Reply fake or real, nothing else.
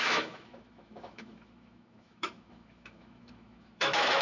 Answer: fake